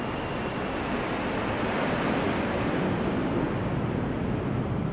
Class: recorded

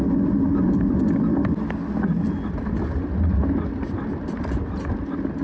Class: recorded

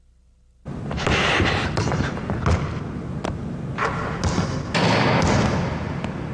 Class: recorded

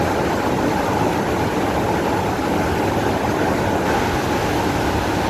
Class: recorded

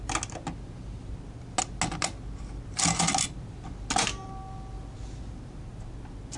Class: recorded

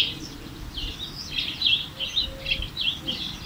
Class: recorded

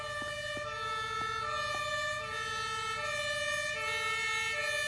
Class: recorded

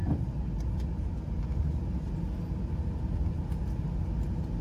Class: recorded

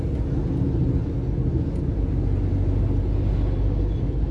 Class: recorded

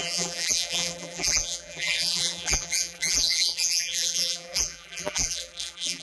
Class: remade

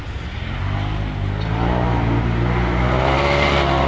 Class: recorded